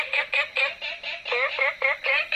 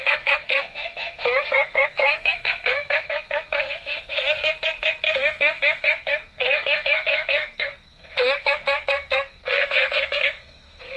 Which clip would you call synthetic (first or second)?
second